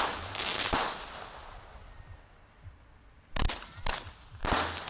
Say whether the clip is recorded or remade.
recorded